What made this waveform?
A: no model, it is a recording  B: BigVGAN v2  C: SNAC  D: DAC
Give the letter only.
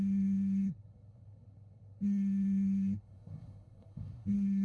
C